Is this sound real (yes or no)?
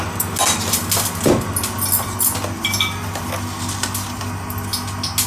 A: yes